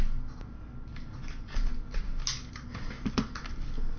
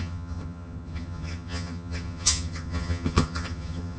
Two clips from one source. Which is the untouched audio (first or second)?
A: first